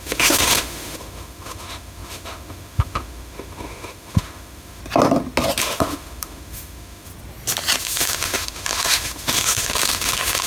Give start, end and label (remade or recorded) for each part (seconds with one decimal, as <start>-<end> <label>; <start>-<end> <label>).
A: 0.0-4.8 remade; 4.8-5.6 recorded; 5.6-7.1 remade; 7.1-7.8 recorded; 7.8-10.5 remade